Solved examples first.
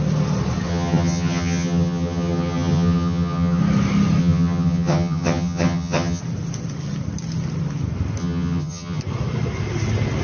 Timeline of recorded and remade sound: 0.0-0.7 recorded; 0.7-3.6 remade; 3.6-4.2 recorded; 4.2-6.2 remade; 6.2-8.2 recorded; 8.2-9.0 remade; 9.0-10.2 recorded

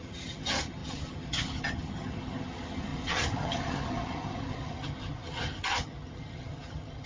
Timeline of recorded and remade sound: 0.0-7.1 remade